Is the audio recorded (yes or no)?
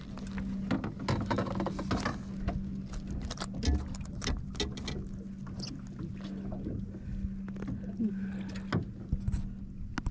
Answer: yes